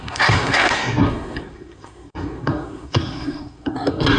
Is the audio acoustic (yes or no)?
no